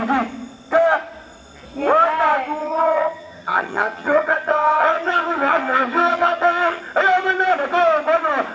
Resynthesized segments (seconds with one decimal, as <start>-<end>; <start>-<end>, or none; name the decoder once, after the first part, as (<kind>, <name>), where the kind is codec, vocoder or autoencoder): 2.6-6.8 (vocoder, HiFi-GAN)